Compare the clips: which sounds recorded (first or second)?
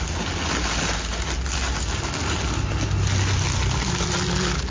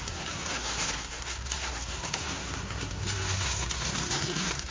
first